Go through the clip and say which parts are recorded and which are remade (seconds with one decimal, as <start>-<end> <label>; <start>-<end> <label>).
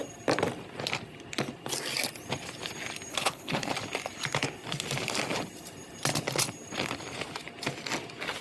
0.0-3.1 recorded; 3.1-3.7 remade; 3.7-8.4 recorded